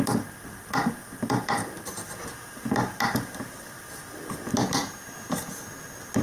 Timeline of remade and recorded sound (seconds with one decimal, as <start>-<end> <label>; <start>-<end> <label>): 0.0-6.2 recorded